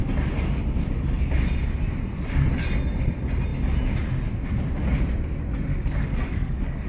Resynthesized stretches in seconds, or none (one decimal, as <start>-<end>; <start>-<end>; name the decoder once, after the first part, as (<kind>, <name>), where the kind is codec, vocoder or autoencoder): 5.7-6.9 (codec, DAC)